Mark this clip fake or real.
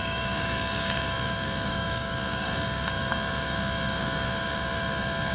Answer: fake